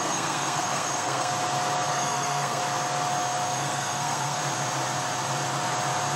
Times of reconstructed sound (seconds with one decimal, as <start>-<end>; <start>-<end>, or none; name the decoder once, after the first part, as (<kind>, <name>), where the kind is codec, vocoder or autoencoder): 0.0-1.3 (codec, SNAC); 1.9-2.6; 3.5-4.4